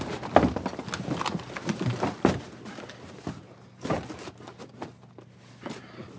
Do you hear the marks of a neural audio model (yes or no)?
no